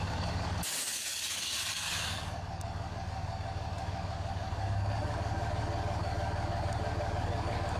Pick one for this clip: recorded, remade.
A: remade